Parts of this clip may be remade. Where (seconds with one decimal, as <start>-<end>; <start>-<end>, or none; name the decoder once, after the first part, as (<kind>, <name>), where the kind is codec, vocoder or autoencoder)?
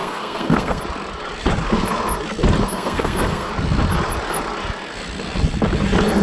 0.0-0.8 (codec, SNAC); 2.7-3.5